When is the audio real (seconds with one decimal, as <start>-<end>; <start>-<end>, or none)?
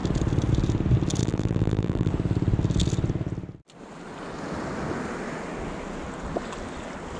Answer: 0.0-1.2; 2.1-7.2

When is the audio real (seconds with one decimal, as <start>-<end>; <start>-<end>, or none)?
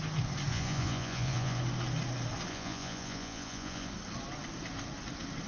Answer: 0.0-0.5; 1.6-2.5; 3.9-5.5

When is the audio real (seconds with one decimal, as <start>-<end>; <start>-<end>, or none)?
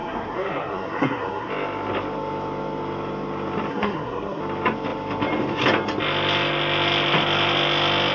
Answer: 1.5-3.7; 4.4-8.1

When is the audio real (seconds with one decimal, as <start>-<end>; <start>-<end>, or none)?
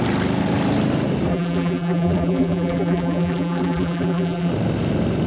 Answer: 0.0-1.3; 4.5-5.3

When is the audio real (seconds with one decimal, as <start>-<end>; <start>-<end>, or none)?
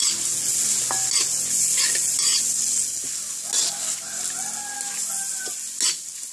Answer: 0.0-6.3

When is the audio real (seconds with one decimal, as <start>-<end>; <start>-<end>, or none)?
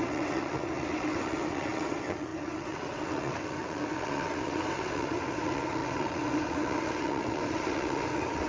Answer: none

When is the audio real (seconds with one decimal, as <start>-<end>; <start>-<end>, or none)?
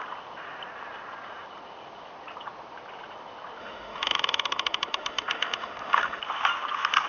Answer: 0.0-3.6; 6.2-7.1